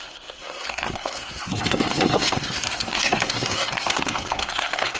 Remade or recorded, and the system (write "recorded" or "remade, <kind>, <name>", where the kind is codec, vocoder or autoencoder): remade, codec, SNAC